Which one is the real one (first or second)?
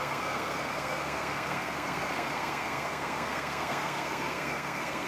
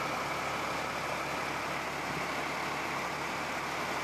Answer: second